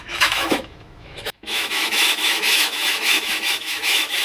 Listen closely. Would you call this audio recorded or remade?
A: remade